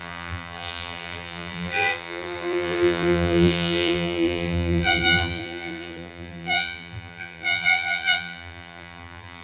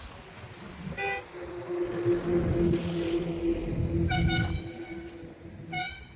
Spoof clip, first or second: first